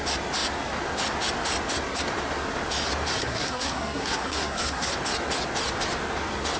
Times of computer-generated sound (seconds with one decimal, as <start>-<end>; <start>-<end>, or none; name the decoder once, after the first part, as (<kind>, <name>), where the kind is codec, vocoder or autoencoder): 3.2-4.9 (codec, SNAC)